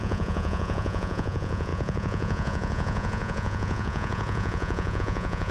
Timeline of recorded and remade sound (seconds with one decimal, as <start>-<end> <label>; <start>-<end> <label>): 0.0-5.5 remade